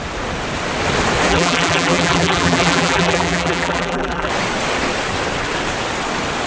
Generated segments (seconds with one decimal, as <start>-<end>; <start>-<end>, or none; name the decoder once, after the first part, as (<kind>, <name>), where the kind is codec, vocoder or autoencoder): 1.3-4.3 (vocoder, BigVGAN v2)

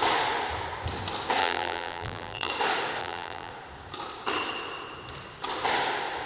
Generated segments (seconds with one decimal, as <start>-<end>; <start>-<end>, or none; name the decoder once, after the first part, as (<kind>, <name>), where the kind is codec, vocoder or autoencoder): 1.4-2.5 (vocoder, BigVGAN v2); 3.0-3.5